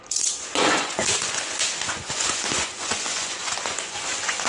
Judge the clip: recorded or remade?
remade